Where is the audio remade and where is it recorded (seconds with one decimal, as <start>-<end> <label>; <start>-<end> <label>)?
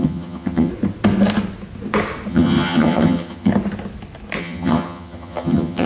0.0-0.7 remade; 0.7-2.3 recorded; 2.3-3.5 remade; 3.5-4.4 recorded; 4.4-5.9 remade